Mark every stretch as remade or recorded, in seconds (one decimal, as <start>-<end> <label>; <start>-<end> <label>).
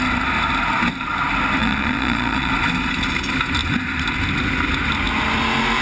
0.0-1.6 recorded; 1.6-2.5 remade; 2.5-5.8 recorded